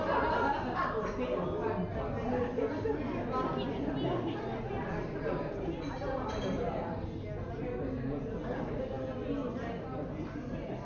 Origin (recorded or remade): recorded